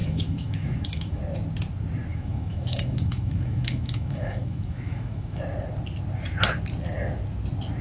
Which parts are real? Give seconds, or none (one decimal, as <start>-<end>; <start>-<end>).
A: 1.2-2.1; 5.4-7.8